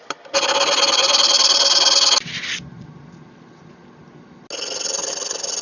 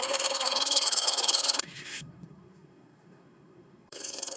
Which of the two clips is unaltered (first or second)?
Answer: first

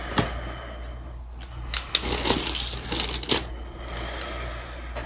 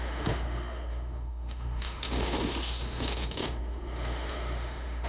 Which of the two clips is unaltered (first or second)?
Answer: first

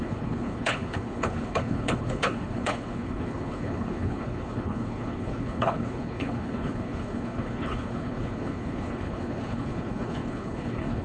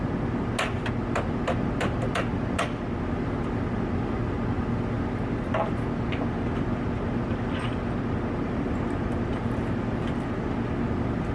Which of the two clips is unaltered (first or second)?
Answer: second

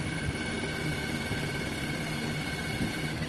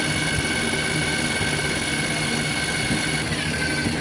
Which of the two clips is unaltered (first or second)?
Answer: second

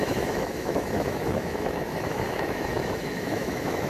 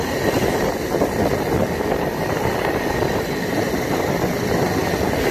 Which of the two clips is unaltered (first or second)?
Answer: second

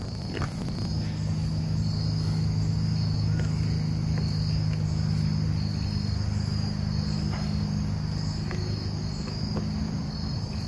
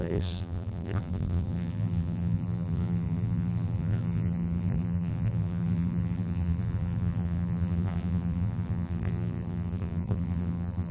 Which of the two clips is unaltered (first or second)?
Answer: first